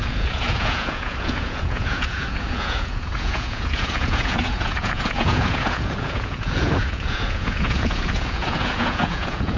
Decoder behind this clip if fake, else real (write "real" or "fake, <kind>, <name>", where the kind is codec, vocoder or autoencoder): fake, vocoder, Vocos